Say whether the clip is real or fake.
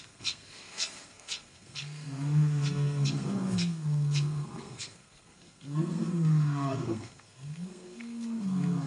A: fake